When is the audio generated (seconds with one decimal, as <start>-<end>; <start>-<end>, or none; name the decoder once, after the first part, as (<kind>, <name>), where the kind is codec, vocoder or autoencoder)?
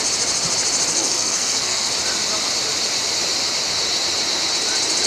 0.9-1.9 (codec, SNAC)